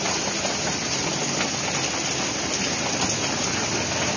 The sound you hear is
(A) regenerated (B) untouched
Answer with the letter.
B